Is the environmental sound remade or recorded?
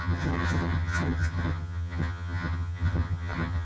remade